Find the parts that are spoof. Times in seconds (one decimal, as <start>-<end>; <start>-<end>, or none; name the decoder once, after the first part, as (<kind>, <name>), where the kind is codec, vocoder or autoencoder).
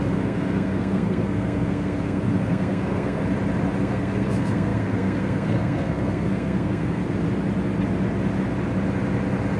0.0-3.2 (codec, SNAC); 3.8-7.0